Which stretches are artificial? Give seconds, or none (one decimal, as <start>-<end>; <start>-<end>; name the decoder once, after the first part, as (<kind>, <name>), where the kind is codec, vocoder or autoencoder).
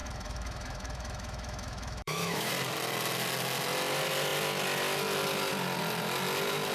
0.0-2.5 (autoencoder, DAC-VAE)